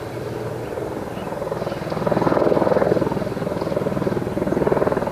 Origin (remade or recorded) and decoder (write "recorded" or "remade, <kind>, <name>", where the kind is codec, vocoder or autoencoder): recorded